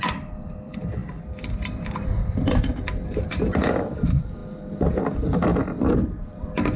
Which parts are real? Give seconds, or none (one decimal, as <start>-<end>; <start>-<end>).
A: 2.7-3.6; 4.4-5.0